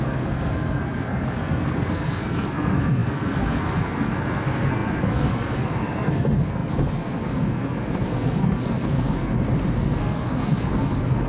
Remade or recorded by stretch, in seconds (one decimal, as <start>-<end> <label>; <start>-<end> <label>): 0.0-9.3 remade; 9.3-9.8 recorded; 9.8-11.3 remade